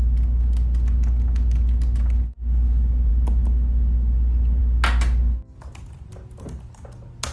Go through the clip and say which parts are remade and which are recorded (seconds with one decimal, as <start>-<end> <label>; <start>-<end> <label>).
0.0-7.3 recorded